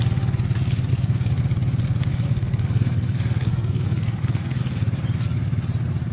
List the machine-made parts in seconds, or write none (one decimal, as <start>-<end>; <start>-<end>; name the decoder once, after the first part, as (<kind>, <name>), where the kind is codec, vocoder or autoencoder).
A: 0.9-1.4 (codec, SNAC); 2.1-4.6

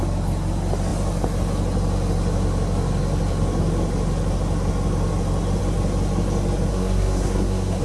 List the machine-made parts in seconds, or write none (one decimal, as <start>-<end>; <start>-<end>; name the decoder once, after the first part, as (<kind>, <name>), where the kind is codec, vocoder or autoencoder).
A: 6.7-7.8 (codec, SNAC)

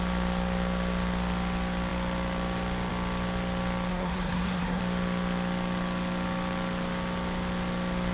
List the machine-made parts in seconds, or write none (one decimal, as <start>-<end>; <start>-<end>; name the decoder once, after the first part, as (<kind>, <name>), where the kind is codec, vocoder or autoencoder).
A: 3.9-4.8 (codec, SNAC)

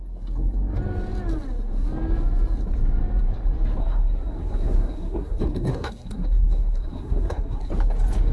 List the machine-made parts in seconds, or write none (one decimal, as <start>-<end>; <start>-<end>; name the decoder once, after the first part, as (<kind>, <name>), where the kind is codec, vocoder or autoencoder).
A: 3.8-7.7 (codec, SNAC)

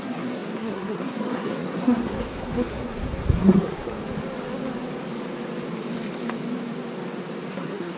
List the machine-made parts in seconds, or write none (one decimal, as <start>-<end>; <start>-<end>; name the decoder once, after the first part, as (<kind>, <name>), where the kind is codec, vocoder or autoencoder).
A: 0.0-4.0 (codec, SNAC); 7.5-8.0

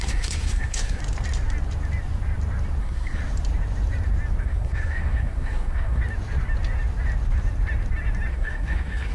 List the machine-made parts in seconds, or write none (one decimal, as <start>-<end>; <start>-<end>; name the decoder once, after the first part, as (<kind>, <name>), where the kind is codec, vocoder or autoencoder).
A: 0.0-1.0 (codec, SNAC); 2.8-3.2; 4.4-6.0; 8.3-9.1